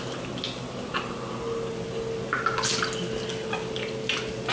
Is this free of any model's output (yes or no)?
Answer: yes